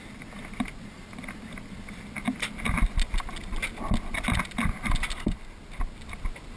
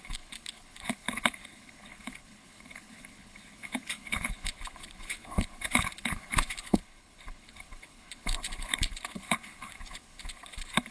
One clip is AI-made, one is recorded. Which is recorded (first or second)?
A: first